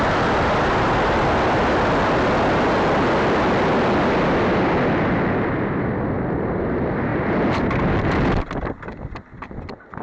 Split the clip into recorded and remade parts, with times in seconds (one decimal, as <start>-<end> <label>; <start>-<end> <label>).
0.0-10.0 recorded